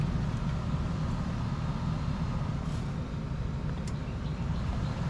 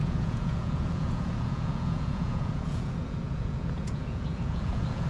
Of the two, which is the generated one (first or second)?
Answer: second